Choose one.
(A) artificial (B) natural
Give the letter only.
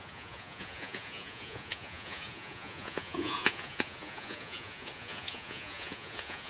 A